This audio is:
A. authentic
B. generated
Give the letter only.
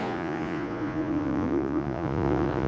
B